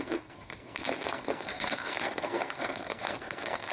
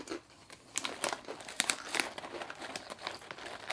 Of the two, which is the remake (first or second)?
first